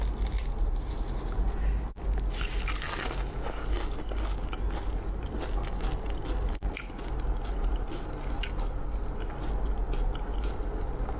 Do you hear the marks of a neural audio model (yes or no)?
no